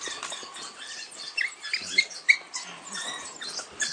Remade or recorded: recorded